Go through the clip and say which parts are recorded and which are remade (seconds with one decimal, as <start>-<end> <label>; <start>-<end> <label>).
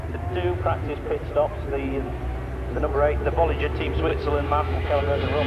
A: 0.0-4.1 recorded; 4.1-5.0 remade; 5.0-5.5 recorded